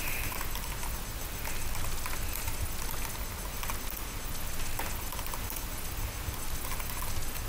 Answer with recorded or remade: recorded